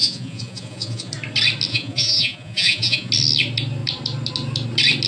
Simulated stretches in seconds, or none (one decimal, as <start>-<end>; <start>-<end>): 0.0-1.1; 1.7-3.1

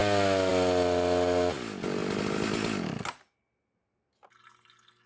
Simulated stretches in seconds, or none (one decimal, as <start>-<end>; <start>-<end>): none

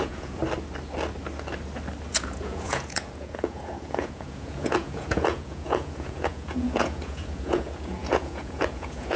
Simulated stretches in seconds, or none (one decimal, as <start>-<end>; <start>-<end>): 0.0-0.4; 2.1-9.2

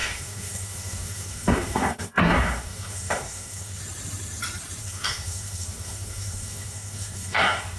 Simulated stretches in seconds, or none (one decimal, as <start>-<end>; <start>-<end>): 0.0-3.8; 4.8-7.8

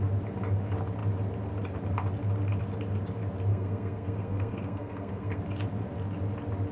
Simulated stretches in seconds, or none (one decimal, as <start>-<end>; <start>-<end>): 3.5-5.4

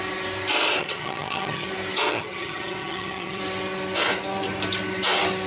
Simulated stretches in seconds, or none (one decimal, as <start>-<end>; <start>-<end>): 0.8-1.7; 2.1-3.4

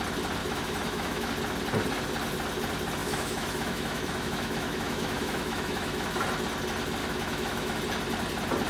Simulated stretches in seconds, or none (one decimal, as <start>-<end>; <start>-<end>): 0.4-1.3; 3.0-6.1; 7.0-7.8

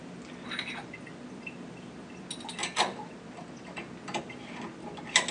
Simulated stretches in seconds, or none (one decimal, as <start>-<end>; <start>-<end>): none